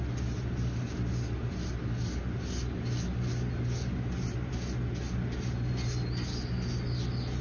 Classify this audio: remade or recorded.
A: recorded